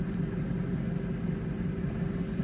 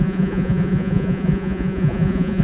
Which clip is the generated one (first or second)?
second